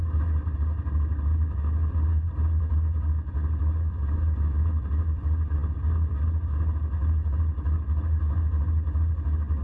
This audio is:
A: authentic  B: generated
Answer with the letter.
A